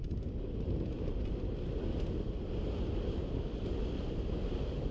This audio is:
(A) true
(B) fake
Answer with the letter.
A